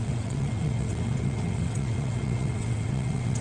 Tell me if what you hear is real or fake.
fake